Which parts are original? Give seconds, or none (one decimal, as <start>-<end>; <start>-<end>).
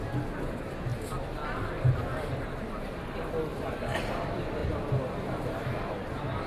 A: 0.0-6.5